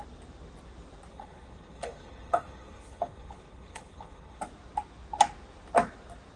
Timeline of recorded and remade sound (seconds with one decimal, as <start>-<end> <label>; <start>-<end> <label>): 0.0-1.1 recorded; 1.1-4.4 remade; 4.4-6.4 recorded